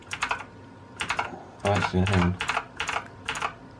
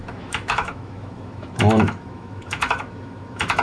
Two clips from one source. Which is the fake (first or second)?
second